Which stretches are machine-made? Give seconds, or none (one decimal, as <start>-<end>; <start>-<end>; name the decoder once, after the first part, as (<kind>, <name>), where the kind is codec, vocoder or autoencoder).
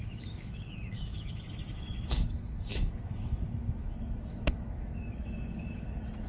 0.0-6.3 (autoencoder, DAC-VAE)